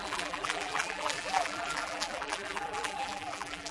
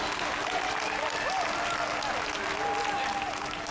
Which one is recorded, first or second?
second